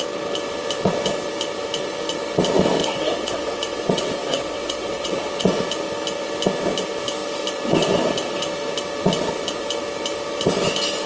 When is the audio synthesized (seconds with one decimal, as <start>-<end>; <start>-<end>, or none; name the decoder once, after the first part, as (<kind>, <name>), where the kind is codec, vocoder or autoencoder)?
2.8-5.6 (vocoder, WaveNeXt)